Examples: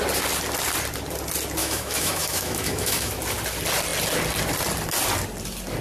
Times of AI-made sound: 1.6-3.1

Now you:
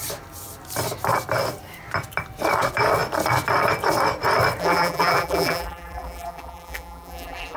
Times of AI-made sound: 4.6-7.6

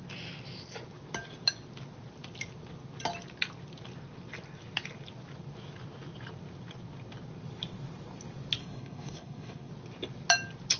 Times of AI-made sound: 8.6-9.7

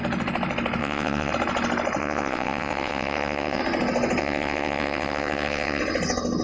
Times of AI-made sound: 0.8-1.3; 2.0-3.6; 4.2-5.8